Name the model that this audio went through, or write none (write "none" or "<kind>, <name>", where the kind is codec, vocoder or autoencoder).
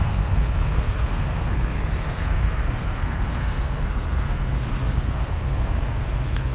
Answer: codec, SNAC